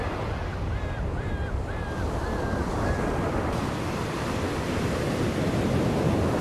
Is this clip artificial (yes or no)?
no